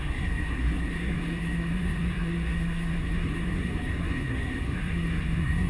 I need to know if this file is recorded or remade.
remade